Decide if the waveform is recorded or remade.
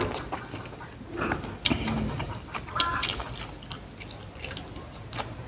recorded